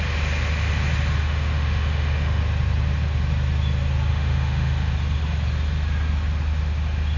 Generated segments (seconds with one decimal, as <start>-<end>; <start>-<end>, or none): 1.2-2.4; 4.1-4.9